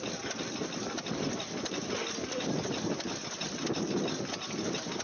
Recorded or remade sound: recorded